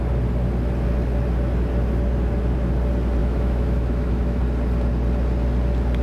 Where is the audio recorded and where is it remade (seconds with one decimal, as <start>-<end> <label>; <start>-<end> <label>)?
0.0-3.2 recorded; 3.2-4.4 remade; 4.4-6.0 recorded